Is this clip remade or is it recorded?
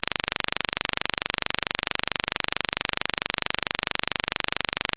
recorded